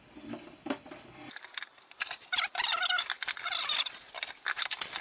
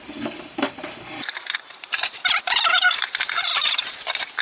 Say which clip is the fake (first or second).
second